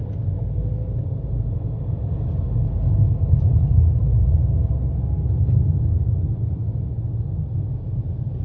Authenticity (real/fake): real